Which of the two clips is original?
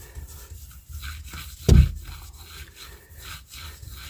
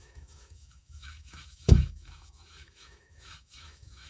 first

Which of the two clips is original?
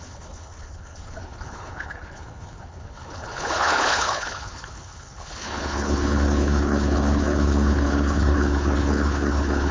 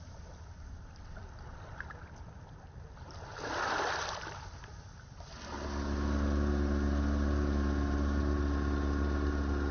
second